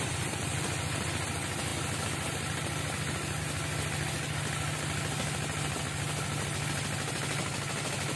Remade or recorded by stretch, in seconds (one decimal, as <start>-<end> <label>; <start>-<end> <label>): 0.0-8.2 recorded